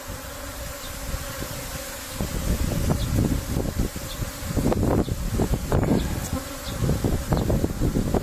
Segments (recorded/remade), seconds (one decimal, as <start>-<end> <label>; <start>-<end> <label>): 0.0-8.2 recorded